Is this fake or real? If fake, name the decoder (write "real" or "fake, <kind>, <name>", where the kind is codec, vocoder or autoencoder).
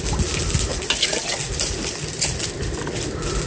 real